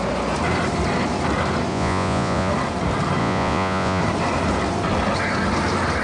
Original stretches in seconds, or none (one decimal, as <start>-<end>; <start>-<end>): 0.0-1.7; 2.5-3.2; 4.0-6.0